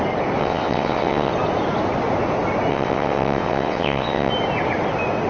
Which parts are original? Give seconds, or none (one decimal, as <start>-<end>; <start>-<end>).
0.0-0.4; 1.3-2.7; 4.3-5.3